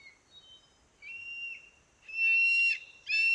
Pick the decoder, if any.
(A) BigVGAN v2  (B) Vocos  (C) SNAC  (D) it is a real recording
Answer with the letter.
D